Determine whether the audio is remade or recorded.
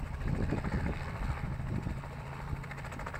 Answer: remade